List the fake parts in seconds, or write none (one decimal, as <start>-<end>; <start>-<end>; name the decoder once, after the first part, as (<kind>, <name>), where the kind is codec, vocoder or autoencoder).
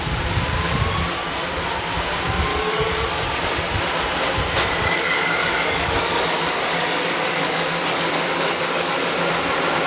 2.5-3.2 (codec, DAC); 4.8-9.3